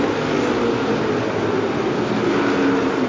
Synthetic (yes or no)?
no